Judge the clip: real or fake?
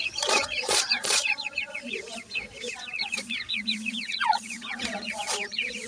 fake